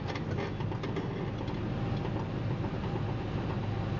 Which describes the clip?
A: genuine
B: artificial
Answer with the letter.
A